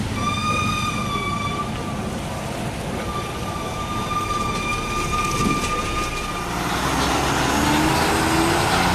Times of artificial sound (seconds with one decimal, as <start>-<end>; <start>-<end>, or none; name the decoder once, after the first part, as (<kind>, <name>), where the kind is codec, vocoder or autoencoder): none